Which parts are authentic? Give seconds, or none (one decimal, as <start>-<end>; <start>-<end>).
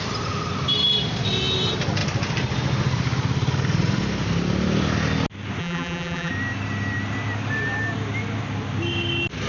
0.0-5.6; 6.3-9.5